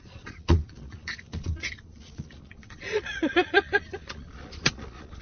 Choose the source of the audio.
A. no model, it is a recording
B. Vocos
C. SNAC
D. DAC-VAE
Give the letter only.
B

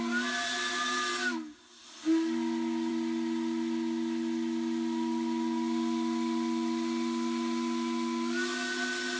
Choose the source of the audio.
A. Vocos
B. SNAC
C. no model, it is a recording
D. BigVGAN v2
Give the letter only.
C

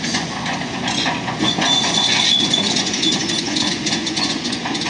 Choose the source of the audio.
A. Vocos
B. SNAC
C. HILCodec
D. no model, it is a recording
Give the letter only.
A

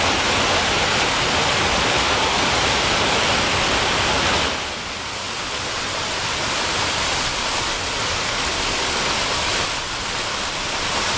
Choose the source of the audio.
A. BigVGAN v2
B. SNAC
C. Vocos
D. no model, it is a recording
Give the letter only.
D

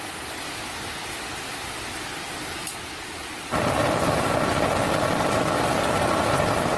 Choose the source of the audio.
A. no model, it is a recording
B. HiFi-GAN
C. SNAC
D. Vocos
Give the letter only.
A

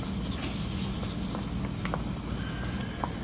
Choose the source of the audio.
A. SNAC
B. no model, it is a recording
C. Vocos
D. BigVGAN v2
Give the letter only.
B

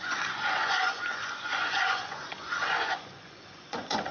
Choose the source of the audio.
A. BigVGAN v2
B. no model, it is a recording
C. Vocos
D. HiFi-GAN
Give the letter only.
C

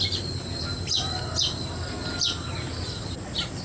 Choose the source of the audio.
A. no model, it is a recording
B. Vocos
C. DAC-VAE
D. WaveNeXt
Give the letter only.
A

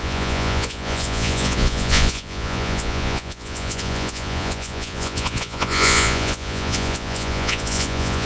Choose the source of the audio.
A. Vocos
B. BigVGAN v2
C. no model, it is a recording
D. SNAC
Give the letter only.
A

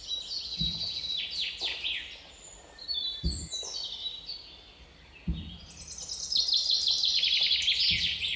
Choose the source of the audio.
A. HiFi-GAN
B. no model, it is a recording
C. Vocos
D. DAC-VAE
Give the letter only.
B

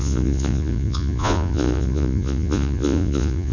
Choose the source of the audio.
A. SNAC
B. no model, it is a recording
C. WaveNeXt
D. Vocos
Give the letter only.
D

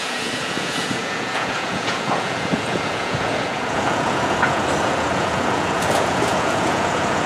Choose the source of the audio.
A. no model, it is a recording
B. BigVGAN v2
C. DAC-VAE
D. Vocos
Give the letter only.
D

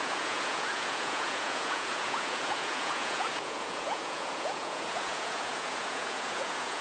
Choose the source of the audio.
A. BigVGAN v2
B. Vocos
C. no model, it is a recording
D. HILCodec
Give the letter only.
B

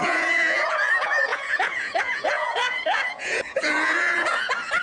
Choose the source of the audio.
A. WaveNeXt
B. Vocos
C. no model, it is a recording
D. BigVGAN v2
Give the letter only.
B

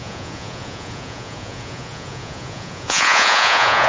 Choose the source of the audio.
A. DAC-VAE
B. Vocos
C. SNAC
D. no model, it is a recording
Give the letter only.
B